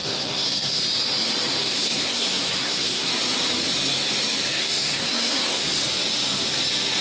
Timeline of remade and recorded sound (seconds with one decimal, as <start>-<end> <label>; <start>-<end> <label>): 0.0-0.8 remade; 0.8-1.6 recorded; 1.6-3.1 remade; 3.1-4.6 recorded; 4.6-5.8 remade; 5.8-7.0 recorded

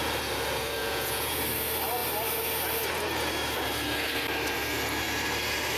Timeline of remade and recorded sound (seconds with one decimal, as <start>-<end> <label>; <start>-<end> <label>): 0.0-0.8 recorded; 0.8-1.4 remade; 1.4-5.8 recorded